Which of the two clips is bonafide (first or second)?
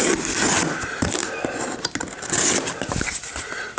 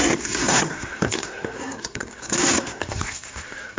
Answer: first